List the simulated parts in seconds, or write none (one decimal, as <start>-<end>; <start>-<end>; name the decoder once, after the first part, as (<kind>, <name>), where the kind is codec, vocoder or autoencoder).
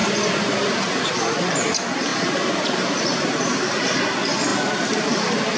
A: 0.0-1.0 (vocoder, BigVGAN v2); 2.1-4.0